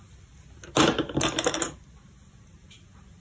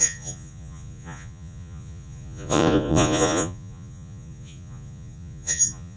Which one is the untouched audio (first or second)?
first